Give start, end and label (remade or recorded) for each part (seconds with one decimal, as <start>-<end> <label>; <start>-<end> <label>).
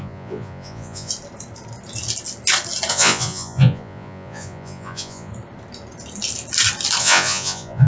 0.0-1.1 remade; 1.1-2.9 recorded; 2.9-5.3 remade; 5.3-7.0 recorded; 7.0-7.9 remade